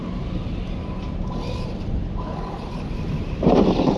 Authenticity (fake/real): real